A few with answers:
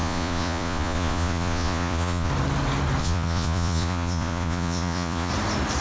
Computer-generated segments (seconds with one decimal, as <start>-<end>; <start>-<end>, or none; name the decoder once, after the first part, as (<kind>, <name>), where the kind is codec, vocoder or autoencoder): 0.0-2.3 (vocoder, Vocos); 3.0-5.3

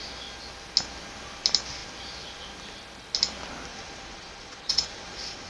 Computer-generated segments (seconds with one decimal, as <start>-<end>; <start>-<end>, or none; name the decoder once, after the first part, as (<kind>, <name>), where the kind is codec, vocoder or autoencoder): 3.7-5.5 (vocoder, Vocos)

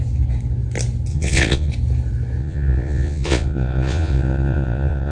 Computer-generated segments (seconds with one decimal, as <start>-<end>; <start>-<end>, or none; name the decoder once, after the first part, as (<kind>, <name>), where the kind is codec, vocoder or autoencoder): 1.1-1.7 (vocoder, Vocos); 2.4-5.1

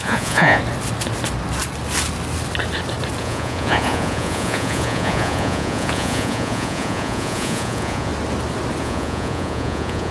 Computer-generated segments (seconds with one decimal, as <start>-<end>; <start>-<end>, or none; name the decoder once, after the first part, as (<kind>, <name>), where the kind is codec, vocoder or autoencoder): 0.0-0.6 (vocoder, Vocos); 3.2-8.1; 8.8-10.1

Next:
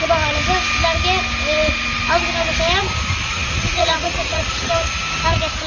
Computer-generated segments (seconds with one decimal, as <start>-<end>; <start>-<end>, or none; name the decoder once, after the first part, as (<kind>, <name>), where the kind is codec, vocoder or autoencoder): 3.2-4.7 (vocoder, Vocos)

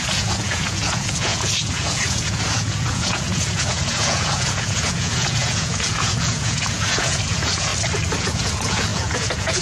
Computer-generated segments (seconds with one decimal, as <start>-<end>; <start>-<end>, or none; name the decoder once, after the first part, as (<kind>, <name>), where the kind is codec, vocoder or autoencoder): 0.0-7.7 (vocoder, Vocos); 8.2-9.6